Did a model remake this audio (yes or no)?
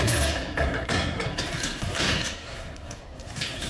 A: yes